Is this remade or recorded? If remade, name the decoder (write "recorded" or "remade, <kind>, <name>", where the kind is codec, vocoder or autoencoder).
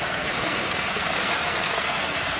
remade, codec, SNAC